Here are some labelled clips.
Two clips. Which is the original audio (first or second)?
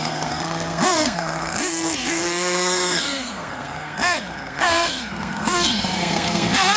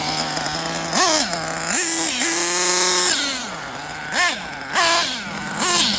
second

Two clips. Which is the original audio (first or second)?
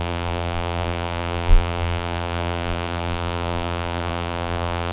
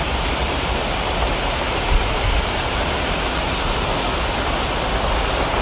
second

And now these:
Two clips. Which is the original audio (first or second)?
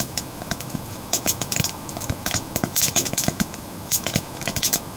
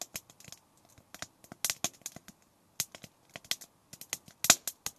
second